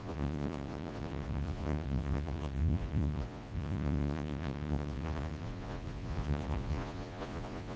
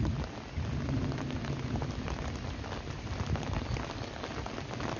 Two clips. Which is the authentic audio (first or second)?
second